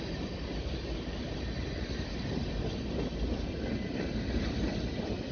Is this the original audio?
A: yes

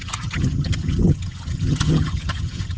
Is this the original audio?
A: no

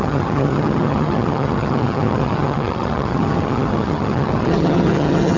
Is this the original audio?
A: no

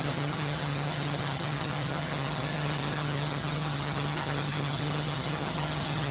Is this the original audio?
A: no